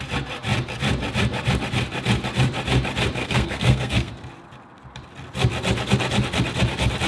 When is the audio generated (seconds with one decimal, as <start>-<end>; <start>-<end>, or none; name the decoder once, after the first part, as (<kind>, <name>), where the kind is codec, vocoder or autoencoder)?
3.2-4.1 (codec, SNAC)